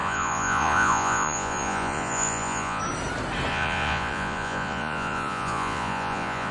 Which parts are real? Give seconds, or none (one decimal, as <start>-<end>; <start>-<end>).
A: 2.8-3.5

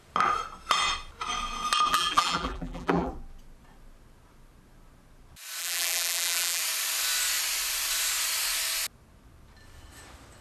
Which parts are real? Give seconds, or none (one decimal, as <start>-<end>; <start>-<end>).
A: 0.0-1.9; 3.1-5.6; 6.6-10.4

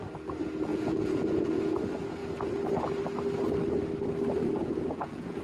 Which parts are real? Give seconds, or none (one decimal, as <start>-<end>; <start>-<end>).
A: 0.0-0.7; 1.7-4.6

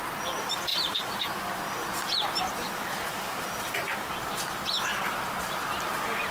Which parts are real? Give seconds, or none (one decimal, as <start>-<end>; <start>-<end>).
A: 0.0-6.3

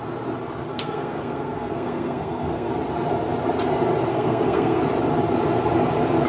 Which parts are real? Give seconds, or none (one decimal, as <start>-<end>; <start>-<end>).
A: 0.0-0.7; 2.7-4.1; 4.8-6.3